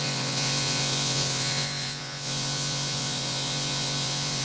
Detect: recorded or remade remade